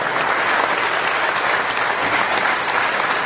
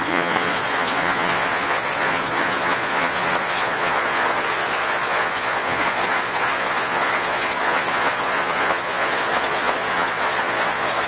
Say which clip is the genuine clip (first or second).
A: first